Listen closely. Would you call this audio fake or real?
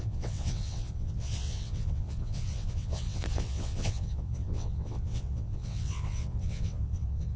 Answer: fake